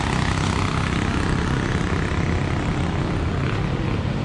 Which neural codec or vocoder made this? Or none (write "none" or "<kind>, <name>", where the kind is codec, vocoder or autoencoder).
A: none